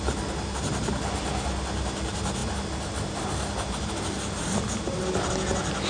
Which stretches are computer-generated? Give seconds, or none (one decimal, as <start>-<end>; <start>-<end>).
none